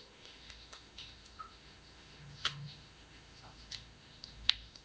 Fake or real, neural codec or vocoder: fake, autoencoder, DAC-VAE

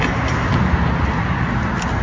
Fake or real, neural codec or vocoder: real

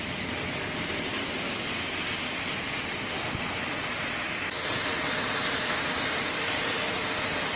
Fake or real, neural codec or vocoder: real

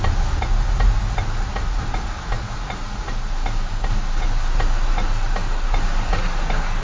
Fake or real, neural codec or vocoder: real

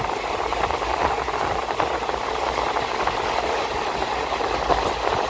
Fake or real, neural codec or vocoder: real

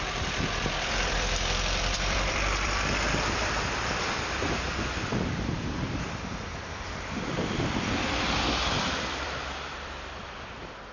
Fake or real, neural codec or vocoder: fake, vocoder, BigVGAN v2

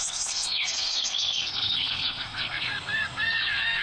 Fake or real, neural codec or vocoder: fake, codec, SNAC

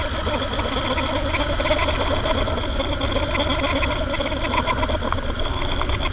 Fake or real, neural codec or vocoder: real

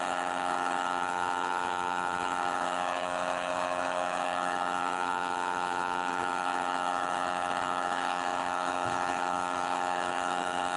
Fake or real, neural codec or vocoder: fake, codec, HILCodec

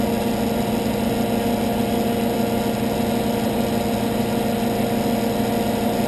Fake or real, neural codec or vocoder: real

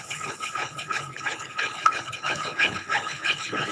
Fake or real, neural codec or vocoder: fake, codec, HILCodec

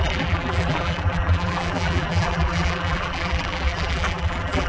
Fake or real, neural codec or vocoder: fake, vocoder, BigVGAN v2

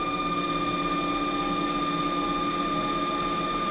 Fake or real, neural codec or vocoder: real